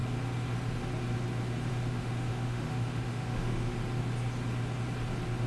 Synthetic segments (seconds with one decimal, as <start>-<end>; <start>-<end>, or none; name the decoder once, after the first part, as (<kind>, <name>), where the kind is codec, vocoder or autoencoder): 1.7-3.7 (autoencoder, DAC-VAE)